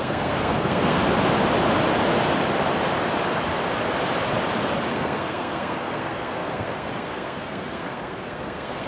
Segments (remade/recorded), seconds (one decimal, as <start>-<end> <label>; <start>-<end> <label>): 0.0-1.0 remade; 1.0-4.9 recorded; 4.9-8.9 remade